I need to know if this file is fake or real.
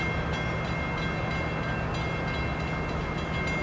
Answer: real